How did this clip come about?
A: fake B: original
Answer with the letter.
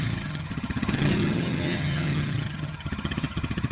A